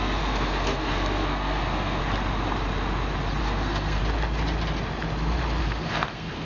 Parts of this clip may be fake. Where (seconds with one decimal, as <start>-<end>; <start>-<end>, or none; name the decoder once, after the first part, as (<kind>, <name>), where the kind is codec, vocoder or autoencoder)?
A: 0.0-2.0 (codec, SNAC); 3.4-4.0; 5.6-6.5